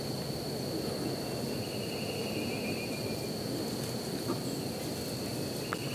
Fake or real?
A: real